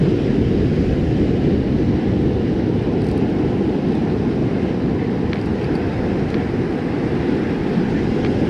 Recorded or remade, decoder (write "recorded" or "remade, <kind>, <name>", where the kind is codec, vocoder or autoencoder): recorded